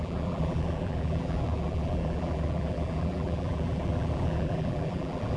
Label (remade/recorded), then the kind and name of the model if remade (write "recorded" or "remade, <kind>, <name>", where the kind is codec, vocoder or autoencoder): remade, vocoder, BigVGAN v2